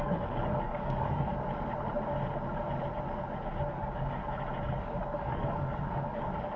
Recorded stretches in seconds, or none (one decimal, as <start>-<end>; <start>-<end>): 1.3-3.7; 4.2-4.8